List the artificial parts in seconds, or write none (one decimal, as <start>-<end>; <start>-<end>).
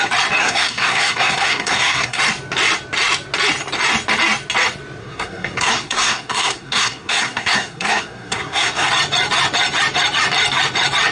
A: 0.4-2.2; 5.0-8.9